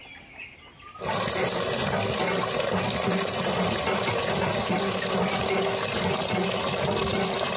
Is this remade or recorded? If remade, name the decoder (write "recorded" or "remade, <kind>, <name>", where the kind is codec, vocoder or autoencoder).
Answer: recorded